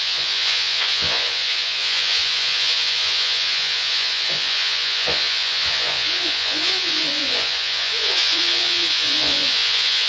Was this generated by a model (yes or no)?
yes